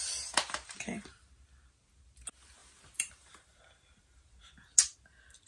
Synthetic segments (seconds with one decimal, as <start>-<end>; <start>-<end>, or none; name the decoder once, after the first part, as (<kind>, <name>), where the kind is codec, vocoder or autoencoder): 2.6-4.5 (vocoder, BigVGAN v2)